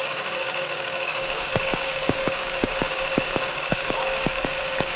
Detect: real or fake fake